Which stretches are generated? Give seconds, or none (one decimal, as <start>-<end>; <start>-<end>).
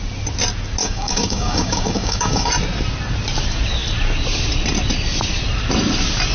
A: 0.8-2.5